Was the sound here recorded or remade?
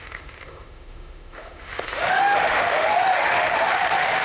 remade